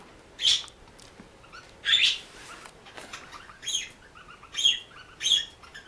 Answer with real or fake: real